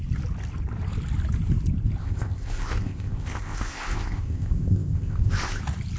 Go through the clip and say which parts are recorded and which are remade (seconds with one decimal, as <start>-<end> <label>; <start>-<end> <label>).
0.0-2.0 recorded; 2.0-5.6 remade; 5.6-6.0 recorded